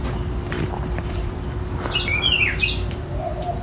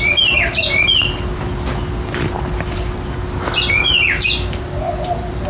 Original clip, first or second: second